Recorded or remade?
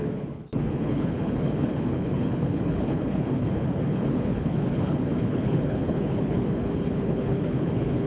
remade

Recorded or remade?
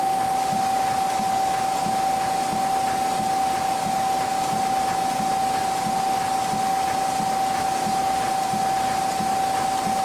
recorded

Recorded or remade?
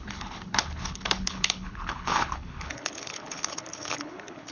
remade